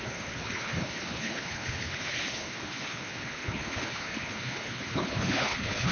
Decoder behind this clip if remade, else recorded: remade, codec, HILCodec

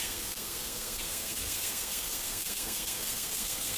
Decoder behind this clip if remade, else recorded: remade, codec, SNAC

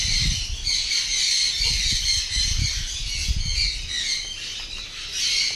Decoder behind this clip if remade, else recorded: recorded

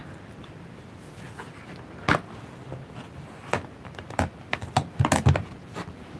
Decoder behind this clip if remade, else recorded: recorded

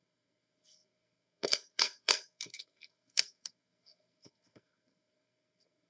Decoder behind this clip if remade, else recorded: remade, codec, SNAC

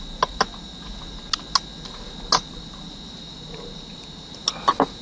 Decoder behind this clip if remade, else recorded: recorded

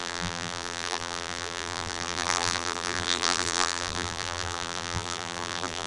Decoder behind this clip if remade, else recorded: remade, vocoder, BigVGAN v2